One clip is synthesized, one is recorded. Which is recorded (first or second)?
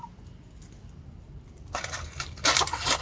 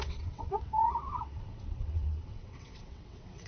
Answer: first